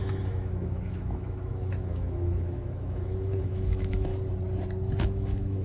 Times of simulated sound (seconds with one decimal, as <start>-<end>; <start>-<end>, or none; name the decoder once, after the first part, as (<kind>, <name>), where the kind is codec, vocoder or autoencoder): 0.0-4.1 (autoencoder, DAC-VAE); 5.0-5.6